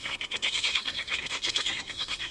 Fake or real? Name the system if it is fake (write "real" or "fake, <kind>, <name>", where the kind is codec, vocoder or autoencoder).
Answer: fake, codec, SNAC